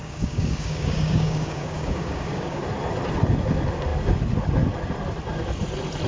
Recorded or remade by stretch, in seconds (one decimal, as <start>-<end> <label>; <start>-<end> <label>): 0.0-2.6 remade; 2.6-6.1 recorded